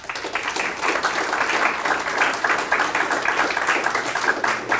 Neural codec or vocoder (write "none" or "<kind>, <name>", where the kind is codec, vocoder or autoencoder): none